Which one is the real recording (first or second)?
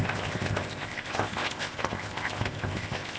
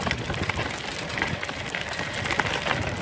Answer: second